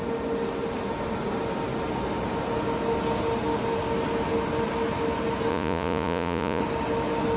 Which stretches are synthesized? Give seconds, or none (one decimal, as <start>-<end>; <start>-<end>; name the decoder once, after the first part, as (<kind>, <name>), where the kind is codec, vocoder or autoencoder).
5.5-6.6 (vocoder, Vocos)